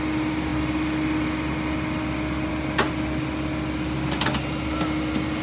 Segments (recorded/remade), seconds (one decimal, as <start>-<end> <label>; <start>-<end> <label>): 0.0-5.4 recorded